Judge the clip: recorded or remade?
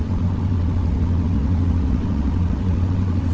remade